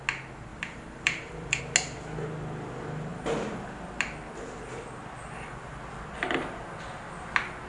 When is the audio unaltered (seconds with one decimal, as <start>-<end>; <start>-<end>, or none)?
0.0-0.5; 1.6-7.7